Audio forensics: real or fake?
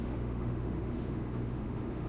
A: fake